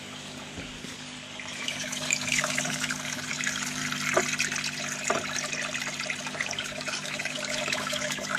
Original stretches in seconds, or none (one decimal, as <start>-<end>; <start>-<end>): 3.8-6.2